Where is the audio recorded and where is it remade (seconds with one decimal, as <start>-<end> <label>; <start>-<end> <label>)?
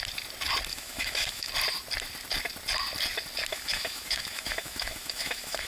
0.0-0.7 recorded; 0.7-1.5 remade; 1.5-3.5 recorded; 3.5-5.7 remade